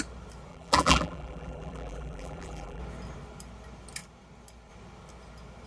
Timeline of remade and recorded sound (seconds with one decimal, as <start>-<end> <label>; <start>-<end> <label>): 0.0-0.5 recorded; 0.5-2.8 remade; 2.8-5.7 recorded